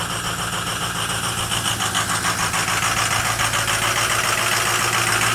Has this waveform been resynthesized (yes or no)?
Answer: no